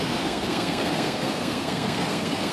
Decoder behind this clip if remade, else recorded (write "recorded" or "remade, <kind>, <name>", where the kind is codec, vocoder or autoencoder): remade, codec, SNAC